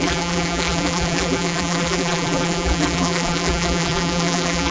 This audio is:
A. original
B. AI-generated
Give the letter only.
B